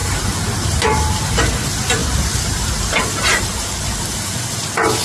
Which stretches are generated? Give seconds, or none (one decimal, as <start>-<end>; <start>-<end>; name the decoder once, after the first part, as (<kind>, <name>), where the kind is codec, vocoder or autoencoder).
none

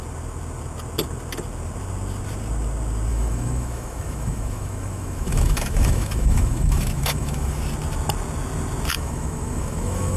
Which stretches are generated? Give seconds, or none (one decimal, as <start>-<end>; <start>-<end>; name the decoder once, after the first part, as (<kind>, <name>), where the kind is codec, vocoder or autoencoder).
3.1-7.6 (autoencoder, DAC-VAE); 8.9-10.2

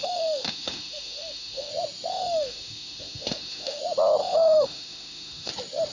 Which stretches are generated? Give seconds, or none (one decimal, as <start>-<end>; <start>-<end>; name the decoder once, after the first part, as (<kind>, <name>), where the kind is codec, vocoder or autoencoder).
0.0-1.7 (autoencoder, DAC-VAE); 2.1-3.8; 4.2-5.5

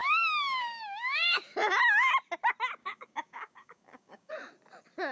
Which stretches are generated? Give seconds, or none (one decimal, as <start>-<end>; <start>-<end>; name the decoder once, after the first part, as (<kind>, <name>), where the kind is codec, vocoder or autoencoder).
0.0-1.4 (codec, DAC); 2.8-4.3